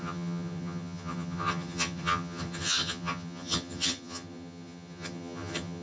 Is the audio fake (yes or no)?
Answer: yes